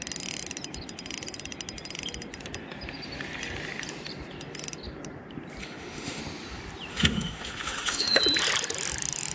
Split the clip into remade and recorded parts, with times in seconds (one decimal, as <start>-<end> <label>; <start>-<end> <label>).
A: 0.0-5.6 recorded; 5.6-6.2 remade; 6.2-6.9 recorded; 6.9-8.2 remade; 8.2-9.3 recorded